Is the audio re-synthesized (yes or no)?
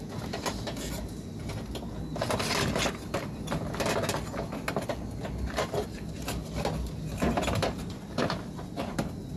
no